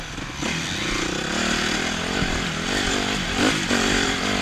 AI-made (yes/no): no